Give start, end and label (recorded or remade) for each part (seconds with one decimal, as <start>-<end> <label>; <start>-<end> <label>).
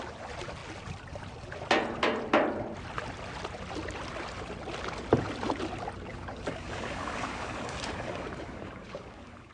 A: 0.0-6.1 recorded; 6.1-9.5 remade